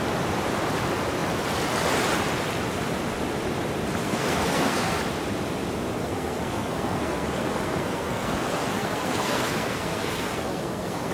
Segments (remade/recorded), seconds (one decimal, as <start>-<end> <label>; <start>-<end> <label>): 0.0-4.0 recorded; 4.0-5.0 remade; 5.0-6.0 recorded; 6.0-11.1 remade